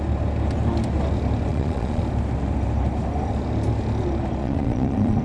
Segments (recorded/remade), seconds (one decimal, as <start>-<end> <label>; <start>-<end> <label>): 0.0-1.5 recorded; 1.5-2.0 remade; 2.0-4.4 recorded; 4.4-5.2 remade